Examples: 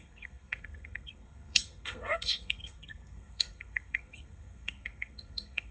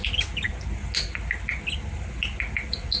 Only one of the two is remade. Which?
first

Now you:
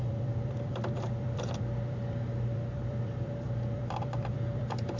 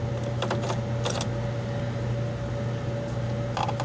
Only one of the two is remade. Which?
first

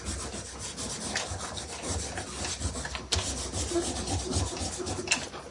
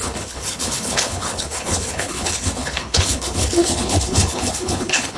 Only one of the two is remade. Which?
second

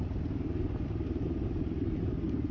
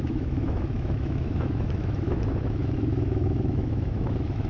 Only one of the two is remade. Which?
second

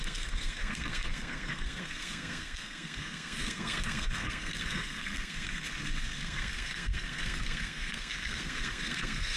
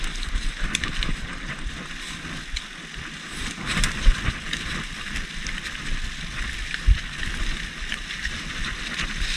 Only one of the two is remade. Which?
first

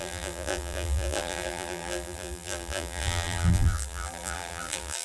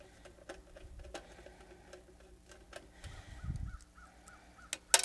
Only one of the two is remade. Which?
first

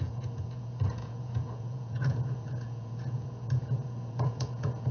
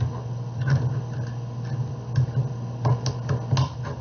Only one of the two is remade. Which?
first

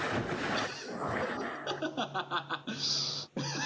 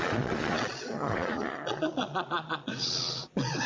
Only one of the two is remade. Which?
second